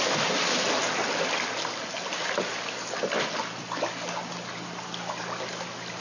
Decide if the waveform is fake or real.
real